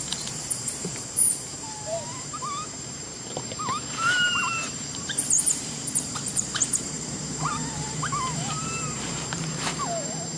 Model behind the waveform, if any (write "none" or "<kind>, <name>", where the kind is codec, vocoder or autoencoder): vocoder, BigVGAN v2